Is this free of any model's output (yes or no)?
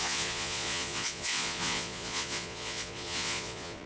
no